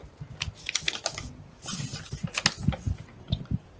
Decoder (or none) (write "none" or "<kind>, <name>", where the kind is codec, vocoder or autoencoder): none